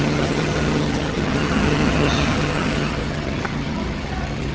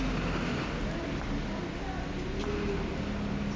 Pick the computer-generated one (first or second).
first